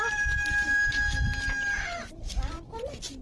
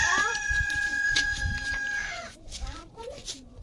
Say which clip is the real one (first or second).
first